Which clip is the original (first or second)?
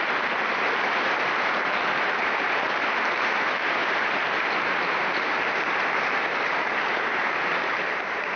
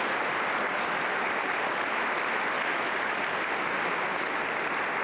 second